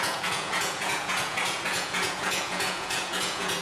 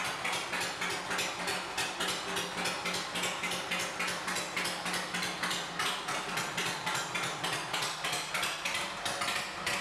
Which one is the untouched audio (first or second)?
second